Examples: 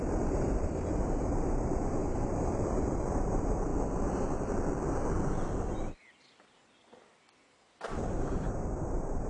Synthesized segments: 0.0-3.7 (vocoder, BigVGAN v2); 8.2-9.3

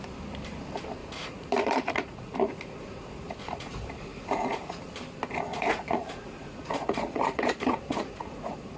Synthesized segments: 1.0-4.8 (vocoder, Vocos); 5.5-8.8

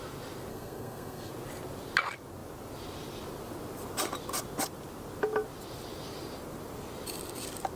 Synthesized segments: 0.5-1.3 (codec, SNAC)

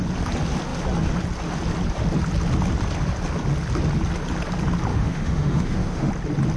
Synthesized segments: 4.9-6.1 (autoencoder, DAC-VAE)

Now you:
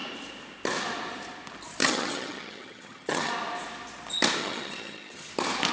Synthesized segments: 1.8-3.3 (vocoder, HiFi-GAN); 4.4-5.3

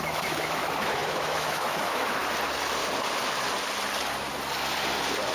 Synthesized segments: 0.0-2.2 (autoencoder, DAC-VAE)

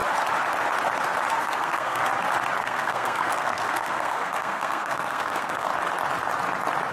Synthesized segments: 1.4-2.0 (codec, SNAC); 2.6-5.7